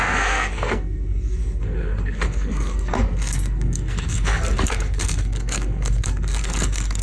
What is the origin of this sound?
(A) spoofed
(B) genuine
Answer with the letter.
A